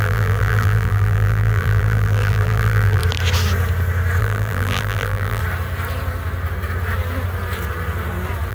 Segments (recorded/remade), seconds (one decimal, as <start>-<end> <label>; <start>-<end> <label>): 0.0-3.0 remade; 3.0-4.2 recorded; 4.2-5.4 remade; 5.4-8.5 recorded